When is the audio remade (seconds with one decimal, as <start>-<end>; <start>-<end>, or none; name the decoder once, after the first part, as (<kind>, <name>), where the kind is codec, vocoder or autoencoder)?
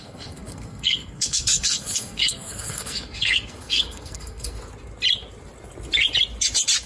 0.0-4.6 (codec, SNAC)